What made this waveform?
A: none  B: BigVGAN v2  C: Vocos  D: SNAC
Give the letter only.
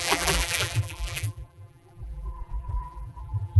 B